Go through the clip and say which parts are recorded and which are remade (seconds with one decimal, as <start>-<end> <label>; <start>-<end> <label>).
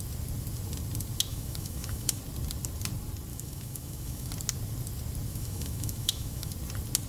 0.0-1.3 recorded; 1.3-2.2 remade; 2.2-3.3 recorded; 3.3-4.3 remade; 4.3-5.3 recorded; 5.3-6.5 remade; 6.5-7.1 recorded